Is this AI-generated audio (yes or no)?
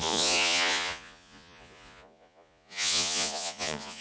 yes